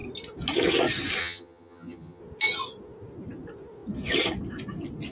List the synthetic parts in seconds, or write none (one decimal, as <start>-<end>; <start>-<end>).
1.2-2.2